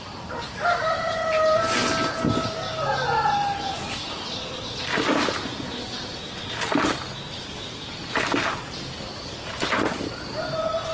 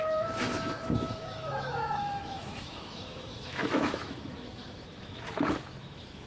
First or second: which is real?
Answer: first